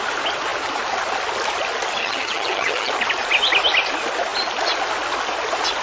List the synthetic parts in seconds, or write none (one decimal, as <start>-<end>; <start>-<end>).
2.0-2.9